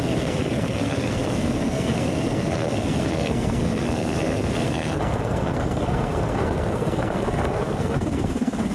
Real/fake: fake